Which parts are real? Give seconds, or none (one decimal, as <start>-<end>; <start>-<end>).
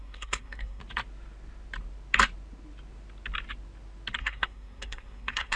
0.8-4.2